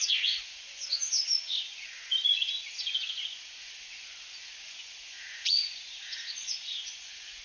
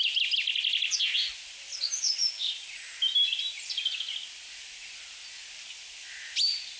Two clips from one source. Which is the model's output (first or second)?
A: first